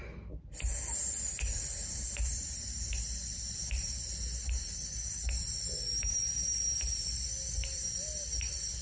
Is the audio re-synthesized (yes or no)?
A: no